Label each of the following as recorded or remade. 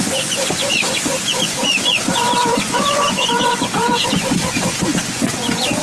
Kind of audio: remade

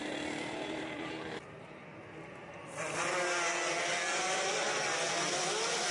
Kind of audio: recorded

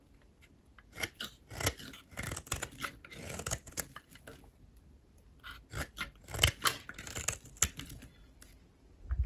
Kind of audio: recorded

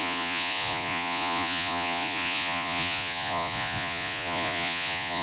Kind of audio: remade